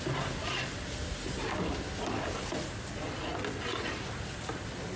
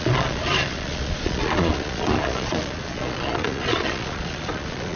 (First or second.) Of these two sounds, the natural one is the first